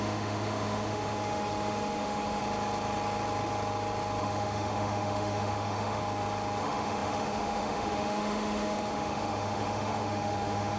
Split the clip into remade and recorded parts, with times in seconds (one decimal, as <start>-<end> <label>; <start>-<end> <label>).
0.0-2.4 remade; 2.4-4.2 recorded; 4.2-6.0 remade; 6.0-6.6 recorded; 6.6-10.8 remade